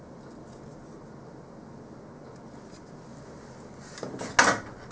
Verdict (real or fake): real